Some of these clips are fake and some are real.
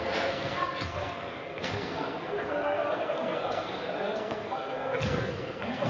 fake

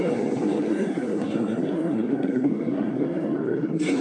fake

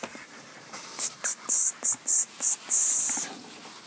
real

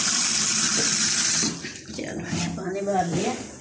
real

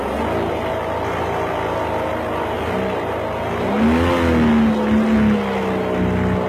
real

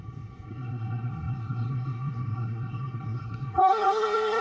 fake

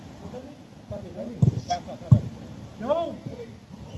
real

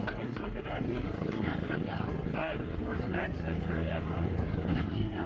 fake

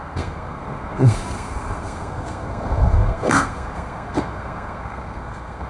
fake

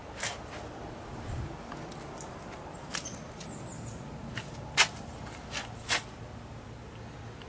real